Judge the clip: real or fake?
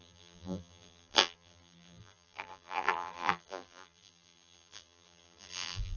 fake